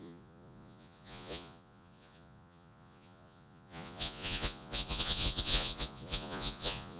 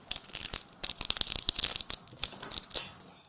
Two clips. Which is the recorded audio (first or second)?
second